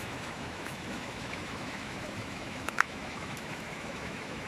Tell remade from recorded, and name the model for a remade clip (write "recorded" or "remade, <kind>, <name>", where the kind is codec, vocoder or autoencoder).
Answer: remade, autoencoder, DAC-VAE